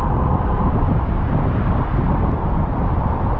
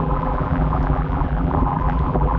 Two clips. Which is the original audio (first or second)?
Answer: first